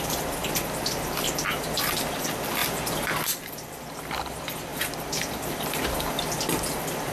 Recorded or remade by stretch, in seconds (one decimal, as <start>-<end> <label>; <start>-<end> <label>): 0.0-2.6 remade; 2.6-3.1 recorded; 3.1-7.1 remade